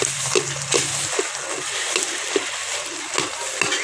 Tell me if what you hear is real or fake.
real